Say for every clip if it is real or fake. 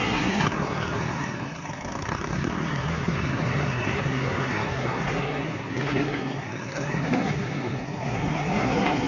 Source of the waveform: fake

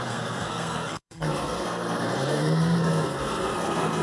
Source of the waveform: fake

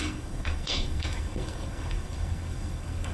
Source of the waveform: fake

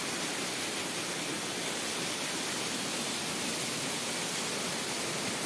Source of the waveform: real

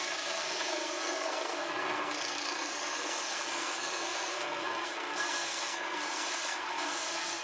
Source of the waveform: fake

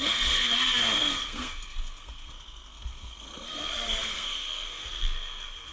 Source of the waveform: fake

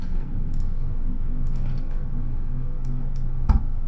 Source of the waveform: fake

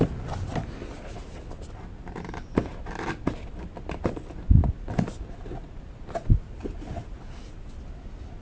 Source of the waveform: real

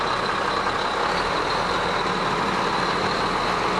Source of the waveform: real